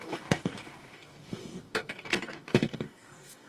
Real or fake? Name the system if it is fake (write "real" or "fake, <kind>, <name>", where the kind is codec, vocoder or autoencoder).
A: fake, codec, DAC